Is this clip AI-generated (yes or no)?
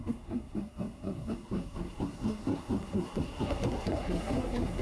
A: yes